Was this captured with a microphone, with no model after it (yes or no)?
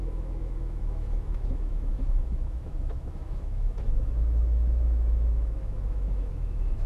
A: no